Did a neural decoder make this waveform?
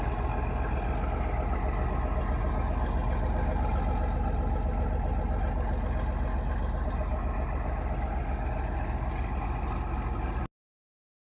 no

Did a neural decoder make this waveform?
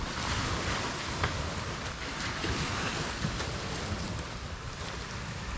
no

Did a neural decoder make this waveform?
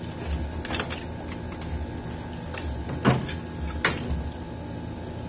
no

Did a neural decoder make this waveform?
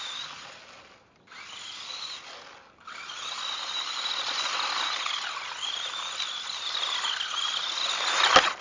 no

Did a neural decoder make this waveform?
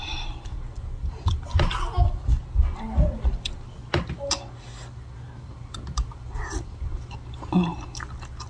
no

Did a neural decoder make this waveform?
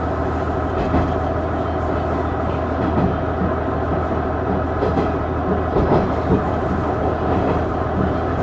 no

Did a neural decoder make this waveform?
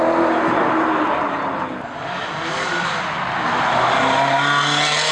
no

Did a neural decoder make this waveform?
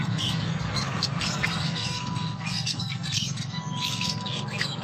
yes